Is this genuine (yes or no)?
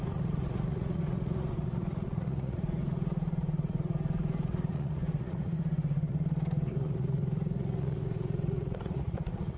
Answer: no